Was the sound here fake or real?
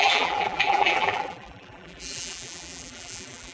fake